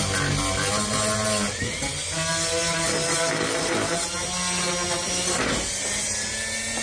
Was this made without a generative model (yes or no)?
yes